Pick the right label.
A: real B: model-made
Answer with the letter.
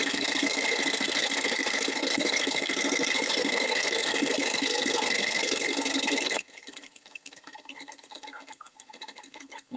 B